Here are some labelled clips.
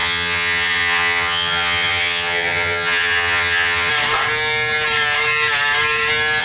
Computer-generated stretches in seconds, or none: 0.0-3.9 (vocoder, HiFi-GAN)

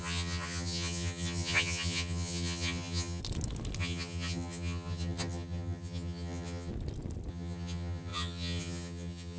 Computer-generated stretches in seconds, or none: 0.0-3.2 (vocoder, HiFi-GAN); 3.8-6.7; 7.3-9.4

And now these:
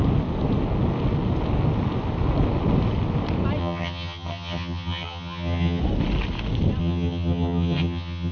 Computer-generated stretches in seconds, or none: 3.6-5.8 (vocoder, HiFi-GAN); 6.8-8.3

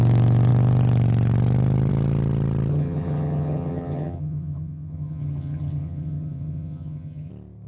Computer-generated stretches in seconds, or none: 2.7-7.3 (vocoder, HiFi-GAN)